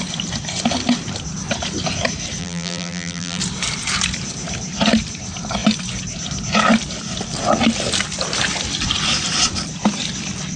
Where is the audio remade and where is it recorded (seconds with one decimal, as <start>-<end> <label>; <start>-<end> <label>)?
0.0-2.4 recorded; 2.4-3.4 remade; 3.4-10.6 recorded